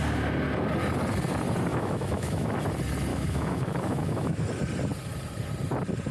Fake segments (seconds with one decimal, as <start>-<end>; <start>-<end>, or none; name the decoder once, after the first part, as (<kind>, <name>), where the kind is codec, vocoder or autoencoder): 1.7-2.6 (autoencoder, DAC-VAE); 3.1-4.4